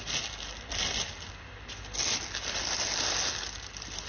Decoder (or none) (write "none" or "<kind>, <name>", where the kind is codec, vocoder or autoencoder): none